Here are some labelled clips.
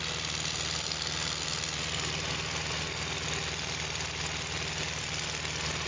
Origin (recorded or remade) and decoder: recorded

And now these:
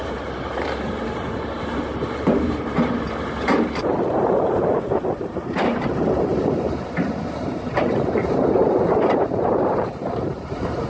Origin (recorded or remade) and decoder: remade, vocoder, BigVGAN v2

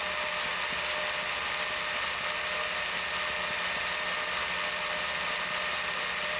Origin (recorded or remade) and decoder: recorded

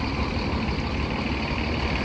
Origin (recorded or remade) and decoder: recorded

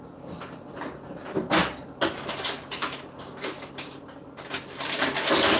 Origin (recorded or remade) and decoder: recorded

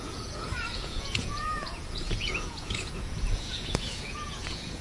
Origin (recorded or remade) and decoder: remade, vocoder, Vocos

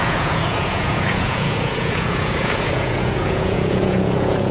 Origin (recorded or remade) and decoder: remade, vocoder, Vocos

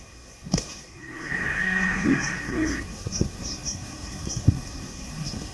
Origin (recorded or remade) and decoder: remade, codec, SNAC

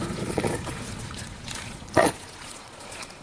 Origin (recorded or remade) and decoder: remade, vocoder, Vocos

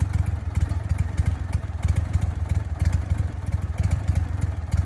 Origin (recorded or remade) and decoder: remade, vocoder, BigVGAN v2